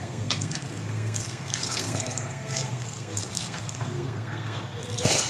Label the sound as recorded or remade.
remade